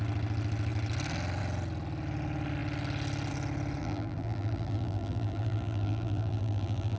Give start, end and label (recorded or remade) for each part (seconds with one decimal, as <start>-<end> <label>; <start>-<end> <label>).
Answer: 0.0-3.8 recorded; 3.8-7.0 remade